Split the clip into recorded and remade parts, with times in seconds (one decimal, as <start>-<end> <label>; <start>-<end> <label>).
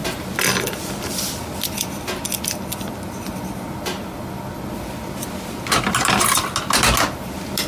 0.0-7.7 recorded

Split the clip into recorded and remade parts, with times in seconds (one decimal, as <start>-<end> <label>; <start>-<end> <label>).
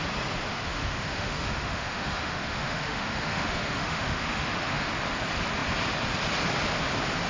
0.0-0.5 recorded; 0.5-4.9 remade; 4.9-7.3 recorded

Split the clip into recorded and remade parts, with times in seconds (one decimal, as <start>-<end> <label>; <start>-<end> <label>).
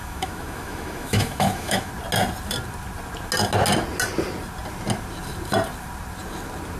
0.0-1.9 remade; 1.9-6.8 recorded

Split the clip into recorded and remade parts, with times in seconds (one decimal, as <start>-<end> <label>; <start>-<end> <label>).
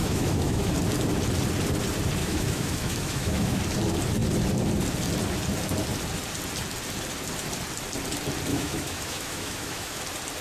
0.0-0.7 remade; 0.7-2.2 recorded; 2.2-3.6 remade; 3.6-8.5 recorded; 8.5-10.0 remade; 10.0-10.4 recorded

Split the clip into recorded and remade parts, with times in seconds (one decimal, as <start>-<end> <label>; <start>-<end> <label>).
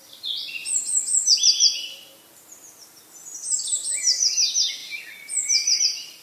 0.0-6.2 recorded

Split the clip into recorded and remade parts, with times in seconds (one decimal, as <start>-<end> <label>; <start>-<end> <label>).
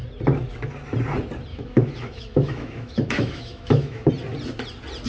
0.0-1.5 recorded; 1.5-4.1 remade; 4.1-5.1 recorded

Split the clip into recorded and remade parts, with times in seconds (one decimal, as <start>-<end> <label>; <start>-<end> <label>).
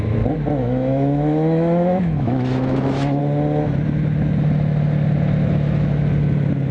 0.0-0.6 recorded; 0.6-3.2 remade; 3.2-6.7 recorded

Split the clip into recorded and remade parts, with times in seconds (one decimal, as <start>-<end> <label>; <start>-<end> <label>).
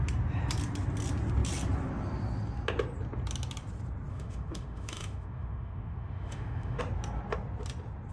0.0-4.1 recorded; 4.1-6.8 remade; 6.8-8.1 recorded